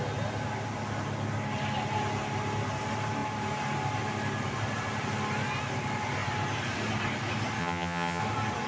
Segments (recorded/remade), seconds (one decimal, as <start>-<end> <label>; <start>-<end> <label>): 0.0-7.6 recorded; 7.6-8.2 remade; 8.2-8.7 recorded